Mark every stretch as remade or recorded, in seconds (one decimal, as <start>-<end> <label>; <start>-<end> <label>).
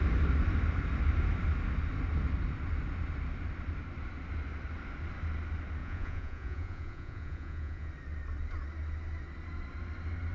0.0-5.8 recorded; 5.8-7.9 remade; 7.9-10.3 recorded